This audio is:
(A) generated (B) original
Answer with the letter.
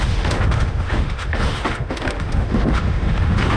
A